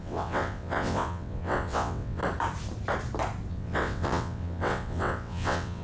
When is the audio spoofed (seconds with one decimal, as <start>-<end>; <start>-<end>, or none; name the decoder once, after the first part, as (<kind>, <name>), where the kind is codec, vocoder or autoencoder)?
0.0-2.2 (vocoder, WaveNeXt); 3.5-5.8